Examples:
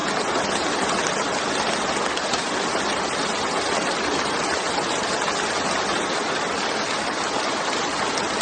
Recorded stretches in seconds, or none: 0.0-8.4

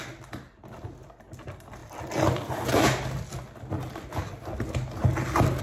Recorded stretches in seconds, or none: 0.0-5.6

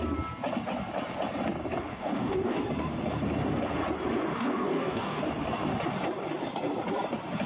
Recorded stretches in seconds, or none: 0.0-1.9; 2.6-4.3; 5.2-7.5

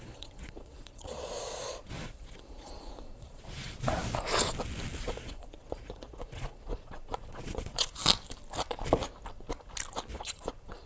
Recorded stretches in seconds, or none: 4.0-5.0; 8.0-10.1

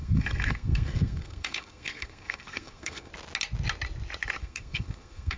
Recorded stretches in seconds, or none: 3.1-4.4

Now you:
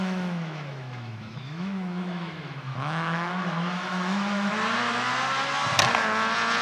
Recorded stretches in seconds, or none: 4.5-6.6